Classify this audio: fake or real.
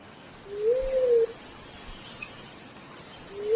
real